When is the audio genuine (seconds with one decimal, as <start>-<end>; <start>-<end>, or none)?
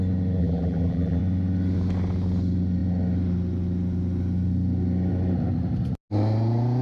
0.0-0.4; 1.2-6.8